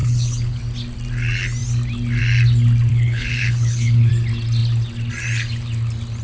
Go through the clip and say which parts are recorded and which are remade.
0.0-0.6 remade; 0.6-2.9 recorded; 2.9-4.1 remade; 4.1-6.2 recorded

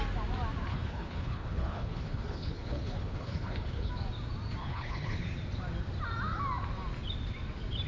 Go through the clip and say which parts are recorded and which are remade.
0.0-0.7 recorded; 0.7-3.9 remade; 3.9-4.6 recorded; 4.6-5.2 remade; 5.2-7.9 recorded